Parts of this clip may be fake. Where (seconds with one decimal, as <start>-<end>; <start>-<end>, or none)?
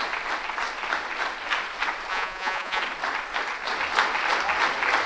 2.1-2.8